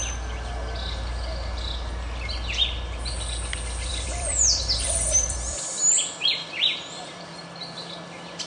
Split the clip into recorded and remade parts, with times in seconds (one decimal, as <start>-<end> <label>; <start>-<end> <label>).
0.0-3.9 recorded; 3.9-7.2 remade; 7.2-8.5 recorded